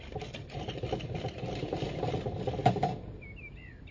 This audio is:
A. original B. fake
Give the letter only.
A